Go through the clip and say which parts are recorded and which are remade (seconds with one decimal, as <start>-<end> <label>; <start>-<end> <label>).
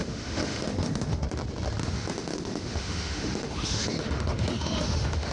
0.0-1.2 remade; 1.2-1.8 recorded; 1.8-5.3 remade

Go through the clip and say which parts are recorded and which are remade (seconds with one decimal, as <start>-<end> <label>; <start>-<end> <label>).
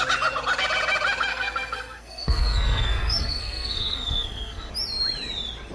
0.0-1.3 recorded; 1.3-4.7 remade; 4.7-5.7 recorded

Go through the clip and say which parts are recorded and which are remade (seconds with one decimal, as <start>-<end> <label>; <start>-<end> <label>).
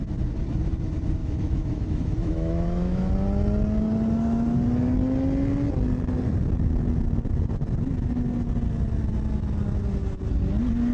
0.0-1.2 recorded; 1.2-3.1 remade; 3.1-10.9 recorded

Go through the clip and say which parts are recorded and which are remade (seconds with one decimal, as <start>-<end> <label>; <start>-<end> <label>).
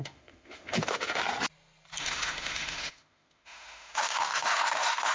0.0-1.2 remade; 1.2-2.0 recorded; 2.0-5.1 remade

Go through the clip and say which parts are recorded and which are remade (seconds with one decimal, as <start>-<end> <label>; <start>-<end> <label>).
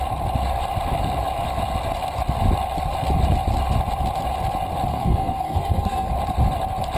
0.0-4.9 recorded; 4.9-6.1 remade; 6.1-7.0 recorded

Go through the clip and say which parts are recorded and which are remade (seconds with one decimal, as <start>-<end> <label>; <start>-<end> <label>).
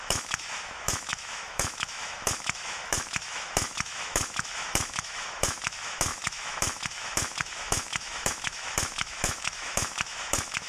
0.0-10.7 remade